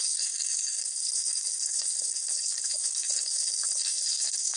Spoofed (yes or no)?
yes